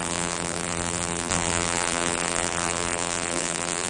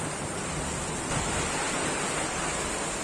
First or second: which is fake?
first